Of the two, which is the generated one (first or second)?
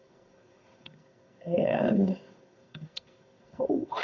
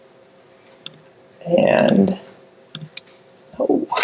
first